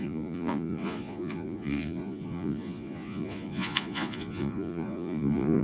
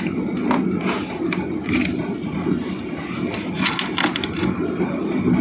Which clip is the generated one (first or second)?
first